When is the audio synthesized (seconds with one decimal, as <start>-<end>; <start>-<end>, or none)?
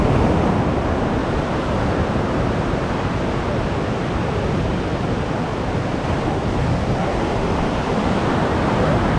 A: 1.2-2.9; 4.9-6.3